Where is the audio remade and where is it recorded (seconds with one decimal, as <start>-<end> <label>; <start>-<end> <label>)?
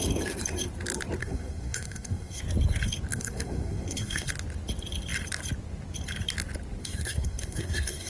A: 0.0-1.2 recorded; 1.2-2.4 remade; 2.4-3.1 recorded; 3.1-4.3 remade; 4.3-6.8 recorded; 6.8-8.1 remade